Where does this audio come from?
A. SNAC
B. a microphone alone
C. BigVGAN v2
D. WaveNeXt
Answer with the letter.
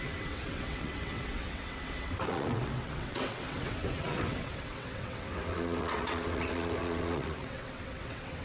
D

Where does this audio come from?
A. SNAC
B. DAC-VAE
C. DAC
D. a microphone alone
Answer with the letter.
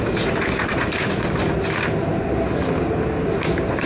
D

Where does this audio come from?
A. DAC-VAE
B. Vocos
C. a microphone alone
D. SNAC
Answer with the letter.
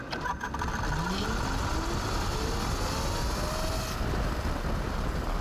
C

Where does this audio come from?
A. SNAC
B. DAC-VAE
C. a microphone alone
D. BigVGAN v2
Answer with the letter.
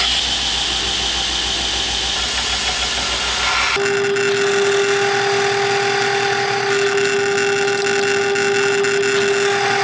C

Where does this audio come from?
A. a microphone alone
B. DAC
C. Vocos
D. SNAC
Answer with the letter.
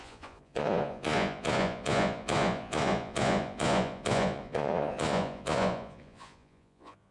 C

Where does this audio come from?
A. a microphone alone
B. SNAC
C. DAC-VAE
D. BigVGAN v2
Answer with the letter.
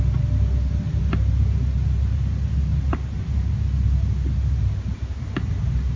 A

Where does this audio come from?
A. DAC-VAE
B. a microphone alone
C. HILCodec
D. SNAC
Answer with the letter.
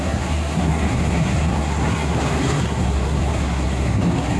D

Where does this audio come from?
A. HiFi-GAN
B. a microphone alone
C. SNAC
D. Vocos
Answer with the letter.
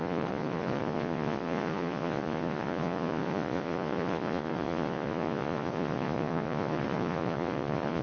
D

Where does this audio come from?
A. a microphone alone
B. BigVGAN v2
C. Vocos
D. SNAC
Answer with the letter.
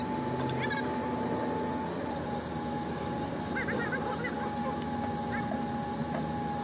A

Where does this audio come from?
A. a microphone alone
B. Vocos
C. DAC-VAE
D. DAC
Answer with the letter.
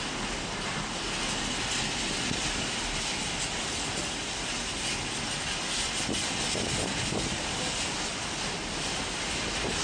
A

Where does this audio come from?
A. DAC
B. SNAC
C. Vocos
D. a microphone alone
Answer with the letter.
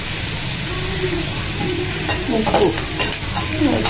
D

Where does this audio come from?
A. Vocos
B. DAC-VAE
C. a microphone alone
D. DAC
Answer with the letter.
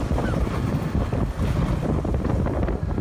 C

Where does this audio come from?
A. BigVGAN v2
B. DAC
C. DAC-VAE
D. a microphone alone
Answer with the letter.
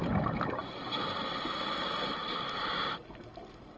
D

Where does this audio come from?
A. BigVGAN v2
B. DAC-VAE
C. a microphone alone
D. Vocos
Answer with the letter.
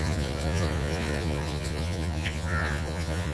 D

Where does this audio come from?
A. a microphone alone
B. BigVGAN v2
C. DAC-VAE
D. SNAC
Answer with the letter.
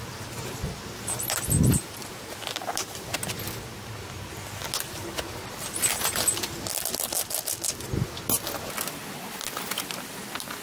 A